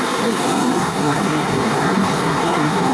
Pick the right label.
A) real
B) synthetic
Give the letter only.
B